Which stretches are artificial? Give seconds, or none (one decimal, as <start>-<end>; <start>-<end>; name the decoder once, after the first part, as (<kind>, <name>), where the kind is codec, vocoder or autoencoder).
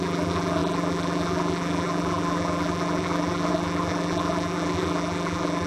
0.0-5.7 (vocoder, BigVGAN v2)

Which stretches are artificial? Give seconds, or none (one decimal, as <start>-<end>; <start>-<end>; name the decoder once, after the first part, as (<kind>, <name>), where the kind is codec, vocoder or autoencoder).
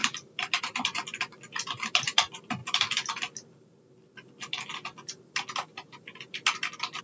0.0-2.6 (vocoder, BigVGAN v2)